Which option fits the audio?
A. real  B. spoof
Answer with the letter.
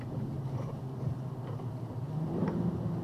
A